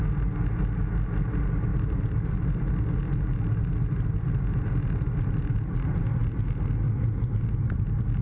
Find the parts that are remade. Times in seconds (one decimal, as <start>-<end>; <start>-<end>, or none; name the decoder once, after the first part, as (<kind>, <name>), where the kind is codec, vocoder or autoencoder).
none